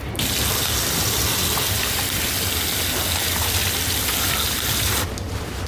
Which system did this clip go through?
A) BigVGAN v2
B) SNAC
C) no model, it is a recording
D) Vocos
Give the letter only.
C